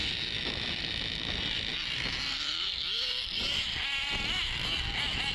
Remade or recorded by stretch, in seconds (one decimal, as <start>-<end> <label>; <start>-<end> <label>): 0.0-5.3 remade